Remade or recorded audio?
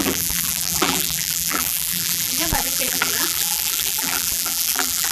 remade